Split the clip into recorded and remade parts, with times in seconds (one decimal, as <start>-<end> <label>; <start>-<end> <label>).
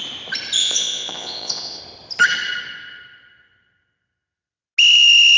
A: 0.0-0.6 recorded; 0.6-1.8 remade; 1.8-5.4 recorded